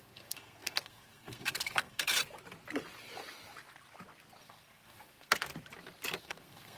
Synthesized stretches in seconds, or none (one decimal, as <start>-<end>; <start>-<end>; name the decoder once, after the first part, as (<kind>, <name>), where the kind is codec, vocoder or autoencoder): 0.0-2.2 (codec, SNAC); 4.4-5.5; 6.2-6.8